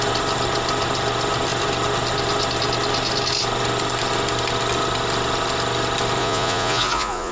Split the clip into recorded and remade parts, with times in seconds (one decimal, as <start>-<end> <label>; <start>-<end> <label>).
0.0-6.2 recorded; 6.2-7.3 remade